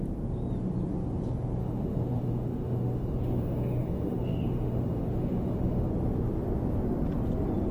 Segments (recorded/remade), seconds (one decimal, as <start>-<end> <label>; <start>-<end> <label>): 0.0-1.6 recorded; 1.6-5.9 remade; 5.9-7.7 recorded